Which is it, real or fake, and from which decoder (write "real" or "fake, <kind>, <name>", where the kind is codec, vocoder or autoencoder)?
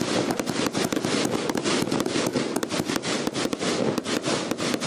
real